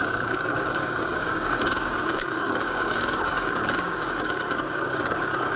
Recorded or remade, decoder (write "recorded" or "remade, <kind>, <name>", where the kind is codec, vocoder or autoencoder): remade, codec, DAC